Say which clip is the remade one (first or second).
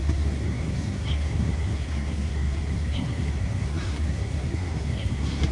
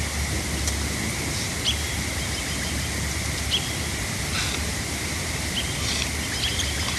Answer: first